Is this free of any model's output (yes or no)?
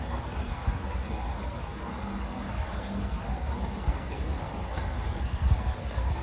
no